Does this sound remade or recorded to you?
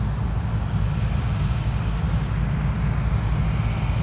recorded